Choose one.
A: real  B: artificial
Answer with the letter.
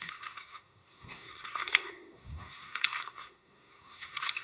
B